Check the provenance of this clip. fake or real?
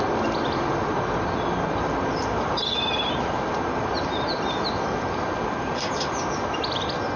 real